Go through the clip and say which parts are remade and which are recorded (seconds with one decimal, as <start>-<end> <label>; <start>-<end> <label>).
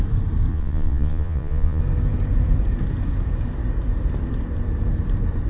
0.0-0.5 recorded; 0.5-1.8 remade; 1.8-5.5 recorded